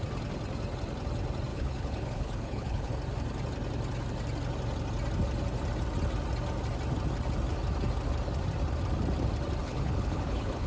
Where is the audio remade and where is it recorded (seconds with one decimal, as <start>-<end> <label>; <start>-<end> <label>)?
0.0-1.5 recorded; 1.5-2.9 remade; 2.9-9.6 recorded; 9.6-10.7 remade